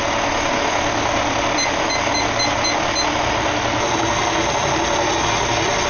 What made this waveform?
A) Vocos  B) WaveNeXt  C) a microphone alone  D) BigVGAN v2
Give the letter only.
C